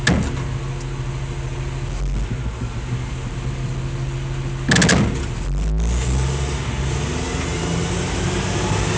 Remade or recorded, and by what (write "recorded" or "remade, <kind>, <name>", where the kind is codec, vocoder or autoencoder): recorded